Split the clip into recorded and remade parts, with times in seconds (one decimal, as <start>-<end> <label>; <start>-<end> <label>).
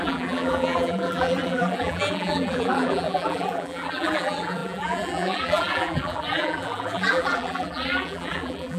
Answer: 0.0-8.8 remade